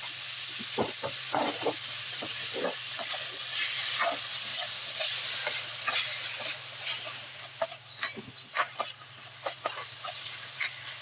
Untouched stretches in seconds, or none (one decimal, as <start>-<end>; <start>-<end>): 0.0-11.0